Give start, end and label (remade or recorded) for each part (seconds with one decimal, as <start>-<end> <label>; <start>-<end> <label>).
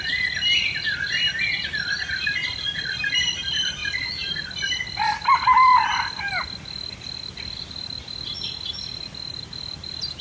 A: 0.0-10.2 recorded